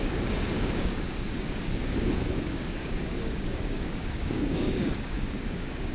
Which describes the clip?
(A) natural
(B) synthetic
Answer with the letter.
B